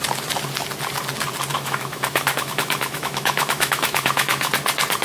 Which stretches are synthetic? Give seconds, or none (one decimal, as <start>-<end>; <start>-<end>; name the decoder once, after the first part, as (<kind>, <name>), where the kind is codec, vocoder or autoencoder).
1.5-4.5 (autoencoder, DAC-VAE)